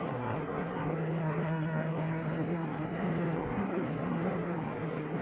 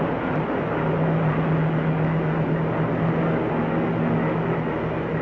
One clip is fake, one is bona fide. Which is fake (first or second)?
first